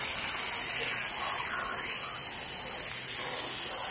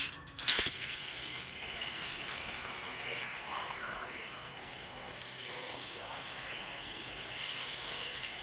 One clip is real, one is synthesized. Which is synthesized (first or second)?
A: second